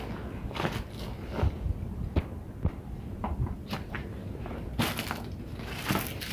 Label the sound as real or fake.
real